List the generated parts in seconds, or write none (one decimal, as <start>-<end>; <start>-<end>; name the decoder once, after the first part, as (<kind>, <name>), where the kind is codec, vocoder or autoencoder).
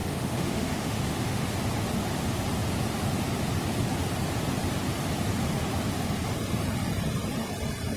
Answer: 0.0-1.5 (autoencoder, DAC-VAE)